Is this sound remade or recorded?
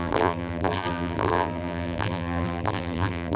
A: remade